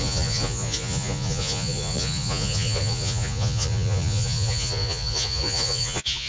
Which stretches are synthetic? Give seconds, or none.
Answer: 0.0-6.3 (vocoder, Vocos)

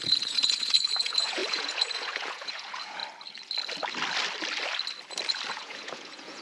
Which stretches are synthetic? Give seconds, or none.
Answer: 0.0-3.0 (vocoder, Vocos); 5.5-6.4

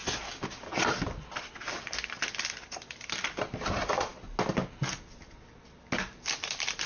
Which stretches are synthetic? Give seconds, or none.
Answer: none

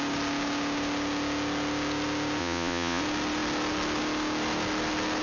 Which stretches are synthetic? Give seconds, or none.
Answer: 2.4-3.0 (vocoder, Vocos)

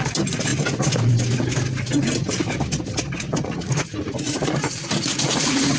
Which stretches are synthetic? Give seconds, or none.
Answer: 3.3-5.8 (vocoder, Vocos)

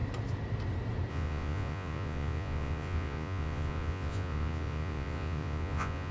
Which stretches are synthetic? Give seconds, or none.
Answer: 1.1-6.1 (vocoder, Vocos)

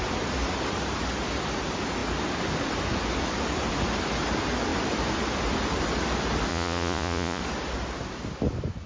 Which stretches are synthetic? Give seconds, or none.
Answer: 6.5-7.4 (vocoder, Vocos)

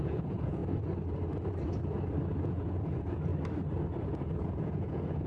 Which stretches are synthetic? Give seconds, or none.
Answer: 0.0-0.6 (vocoder, Vocos); 2.4-3.3; 4.0-5.3